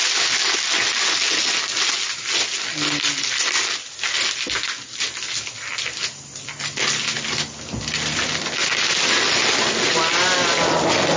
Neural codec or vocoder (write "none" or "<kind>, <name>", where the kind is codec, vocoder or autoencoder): none